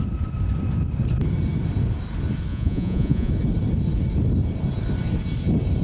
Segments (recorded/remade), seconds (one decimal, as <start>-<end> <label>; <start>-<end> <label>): 0.0-2.5 recorded; 2.5-3.3 remade; 3.3-5.8 recorded